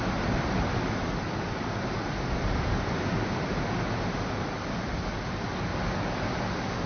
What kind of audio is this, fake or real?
real